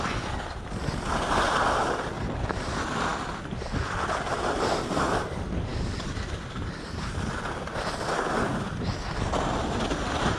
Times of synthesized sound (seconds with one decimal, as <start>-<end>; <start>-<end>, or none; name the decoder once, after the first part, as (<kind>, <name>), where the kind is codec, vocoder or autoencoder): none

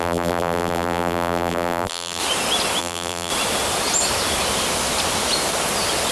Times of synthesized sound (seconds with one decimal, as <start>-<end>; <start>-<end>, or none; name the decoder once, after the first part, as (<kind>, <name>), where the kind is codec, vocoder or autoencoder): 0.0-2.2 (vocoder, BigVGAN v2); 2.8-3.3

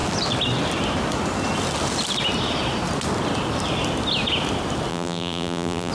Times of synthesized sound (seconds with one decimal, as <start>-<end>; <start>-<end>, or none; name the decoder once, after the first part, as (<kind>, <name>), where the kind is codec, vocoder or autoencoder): 4.9-5.9 (vocoder, BigVGAN v2)